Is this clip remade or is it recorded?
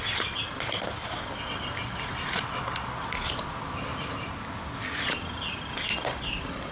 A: recorded